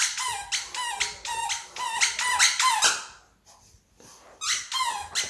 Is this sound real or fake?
real